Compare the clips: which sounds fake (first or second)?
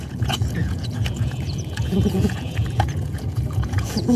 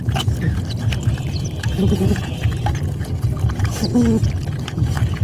first